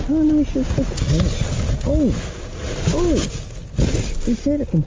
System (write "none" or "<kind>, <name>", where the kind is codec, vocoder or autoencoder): none